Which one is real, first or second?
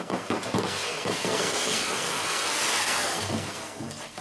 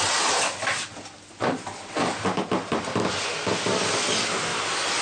second